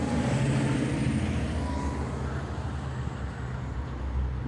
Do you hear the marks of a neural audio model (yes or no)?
no